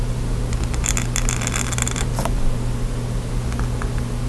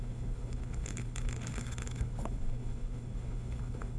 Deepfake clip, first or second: second